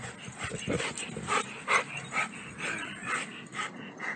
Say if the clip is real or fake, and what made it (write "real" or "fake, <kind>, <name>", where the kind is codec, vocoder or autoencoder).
fake, vocoder, BigVGAN v2